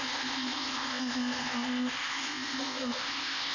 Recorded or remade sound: remade